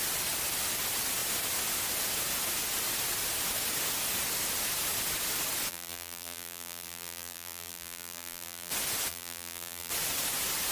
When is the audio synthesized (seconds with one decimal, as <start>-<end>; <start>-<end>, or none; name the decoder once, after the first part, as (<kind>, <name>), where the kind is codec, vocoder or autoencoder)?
5.7-8.7 (vocoder, BigVGAN v2); 9.1-9.9

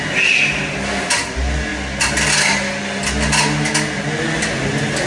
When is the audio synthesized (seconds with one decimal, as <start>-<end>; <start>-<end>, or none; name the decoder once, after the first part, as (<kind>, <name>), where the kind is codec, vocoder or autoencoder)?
none

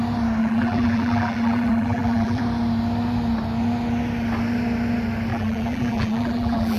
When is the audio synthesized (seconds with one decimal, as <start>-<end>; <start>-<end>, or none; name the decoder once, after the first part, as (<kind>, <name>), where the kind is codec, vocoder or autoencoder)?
0.4-2.4 (vocoder, BigVGAN v2); 5.3-6.8

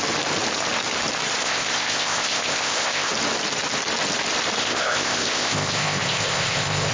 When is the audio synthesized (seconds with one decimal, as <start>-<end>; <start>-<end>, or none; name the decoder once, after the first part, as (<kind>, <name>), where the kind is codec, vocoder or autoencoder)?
1.4-3.1 (codec, ZipCodec); 4.6-6.9